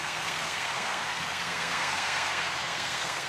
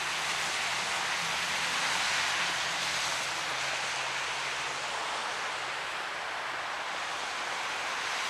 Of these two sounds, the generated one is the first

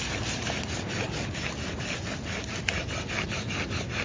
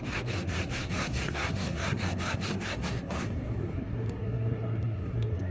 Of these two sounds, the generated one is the second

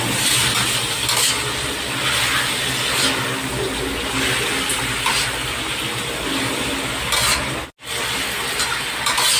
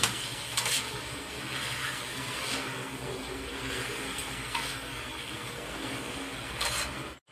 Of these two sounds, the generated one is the second